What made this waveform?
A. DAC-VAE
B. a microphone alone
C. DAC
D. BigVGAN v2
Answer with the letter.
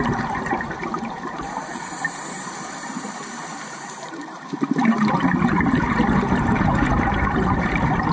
D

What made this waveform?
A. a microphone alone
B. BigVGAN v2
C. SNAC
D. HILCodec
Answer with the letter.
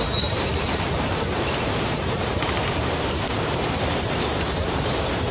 B